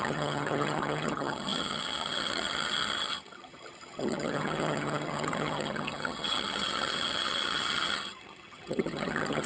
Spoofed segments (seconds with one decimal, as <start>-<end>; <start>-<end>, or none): 0.0-9.5